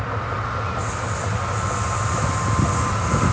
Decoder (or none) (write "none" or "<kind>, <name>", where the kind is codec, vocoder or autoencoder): none